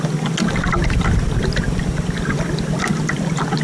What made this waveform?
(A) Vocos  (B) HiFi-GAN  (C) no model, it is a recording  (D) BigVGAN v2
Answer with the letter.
C